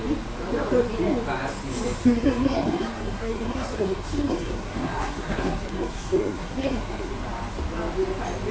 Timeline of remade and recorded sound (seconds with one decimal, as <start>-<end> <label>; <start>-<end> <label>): 0.0-2.0 recorded; 2.0-7.1 remade; 7.1-8.5 recorded